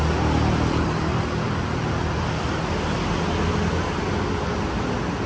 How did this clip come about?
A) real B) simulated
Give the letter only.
A